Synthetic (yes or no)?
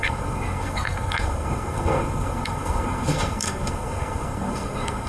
yes